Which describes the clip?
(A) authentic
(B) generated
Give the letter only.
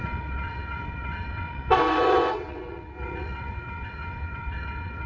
B